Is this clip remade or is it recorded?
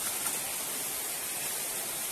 recorded